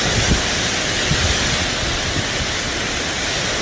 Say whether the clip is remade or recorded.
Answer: recorded